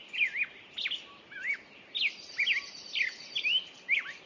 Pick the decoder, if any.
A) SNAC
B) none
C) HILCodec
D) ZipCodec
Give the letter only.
B